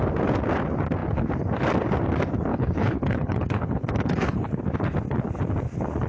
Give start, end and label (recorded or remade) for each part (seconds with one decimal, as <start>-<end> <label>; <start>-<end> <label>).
0.0-2.5 recorded; 2.5-4.6 remade; 4.6-6.1 recorded